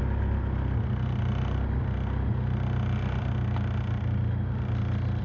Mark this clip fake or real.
real